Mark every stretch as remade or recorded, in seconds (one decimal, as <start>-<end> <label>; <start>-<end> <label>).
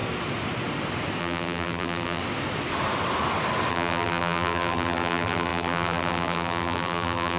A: 0.0-1.2 recorded; 1.2-2.2 remade; 2.2-3.7 recorded; 3.7-7.4 remade